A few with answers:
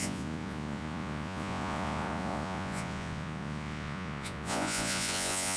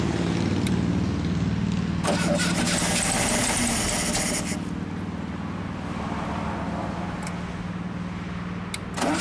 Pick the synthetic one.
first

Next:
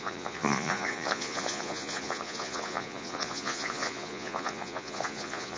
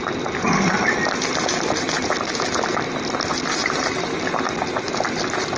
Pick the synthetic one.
first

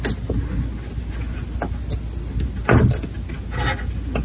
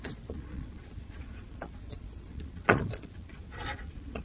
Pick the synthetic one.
second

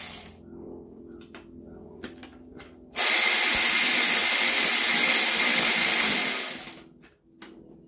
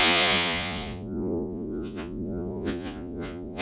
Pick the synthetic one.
second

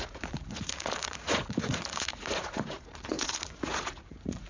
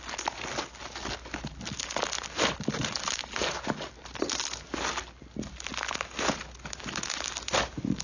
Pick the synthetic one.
first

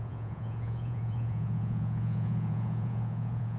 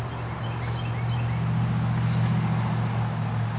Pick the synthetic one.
first